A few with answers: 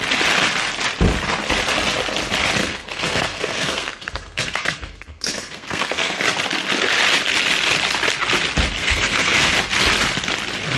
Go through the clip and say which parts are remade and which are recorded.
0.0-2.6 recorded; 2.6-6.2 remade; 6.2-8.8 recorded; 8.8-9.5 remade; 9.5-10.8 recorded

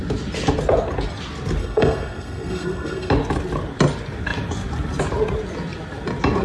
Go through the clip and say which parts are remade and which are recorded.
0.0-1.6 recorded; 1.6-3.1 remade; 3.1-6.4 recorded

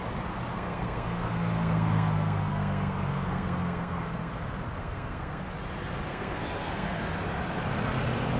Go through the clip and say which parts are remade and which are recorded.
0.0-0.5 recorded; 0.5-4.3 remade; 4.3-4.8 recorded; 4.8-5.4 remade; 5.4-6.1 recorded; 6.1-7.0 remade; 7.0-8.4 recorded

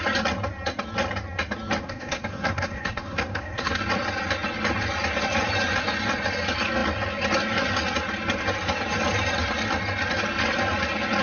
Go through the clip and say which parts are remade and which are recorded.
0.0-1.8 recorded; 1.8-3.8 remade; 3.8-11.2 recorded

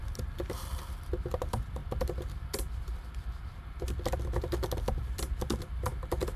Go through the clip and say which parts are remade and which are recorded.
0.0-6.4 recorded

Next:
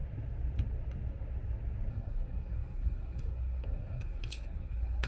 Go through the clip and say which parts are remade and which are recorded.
0.0-1.9 recorded; 1.9-5.1 remade